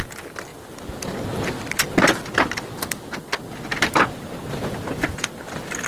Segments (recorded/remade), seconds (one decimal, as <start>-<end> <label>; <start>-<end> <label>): 0.0-4.4 recorded; 4.4-5.3 remade; 5.3-5.9 recorded